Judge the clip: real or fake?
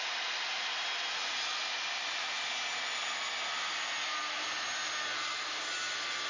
real